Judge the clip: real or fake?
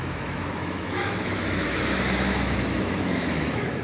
fake